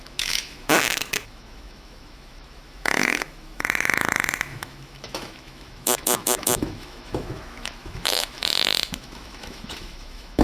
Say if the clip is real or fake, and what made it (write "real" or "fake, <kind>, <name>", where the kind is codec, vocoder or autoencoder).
fake, autoencoder, DAC-VAE